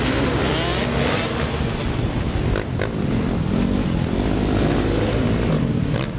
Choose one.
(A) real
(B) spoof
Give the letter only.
A